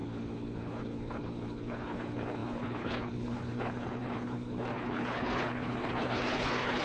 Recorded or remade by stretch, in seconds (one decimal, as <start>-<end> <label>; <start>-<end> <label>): 0.0-6.8 remade